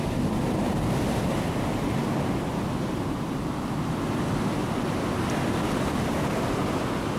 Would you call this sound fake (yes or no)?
no